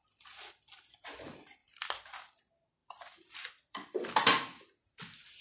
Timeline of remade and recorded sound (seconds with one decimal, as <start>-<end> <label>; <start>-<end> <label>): 0.0-2.8 recorded; 2.8-4.1 remade; 4.1-5.4 recorded